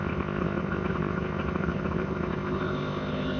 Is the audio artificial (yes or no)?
yes